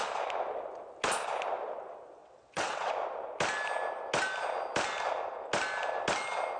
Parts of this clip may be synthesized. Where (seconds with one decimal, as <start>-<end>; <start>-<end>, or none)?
2.2-2.9